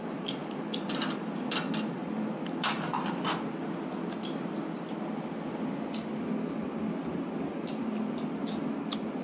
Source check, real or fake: real